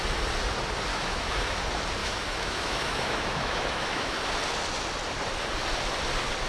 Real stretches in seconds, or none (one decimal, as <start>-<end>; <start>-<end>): 0.0-0.9; 1.6-2.0; 4.2-6.5